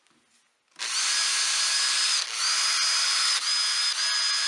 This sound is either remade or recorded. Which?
recorded